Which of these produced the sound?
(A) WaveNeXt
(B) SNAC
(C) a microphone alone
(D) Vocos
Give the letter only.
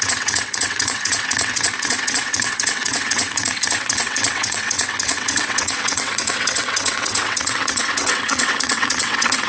A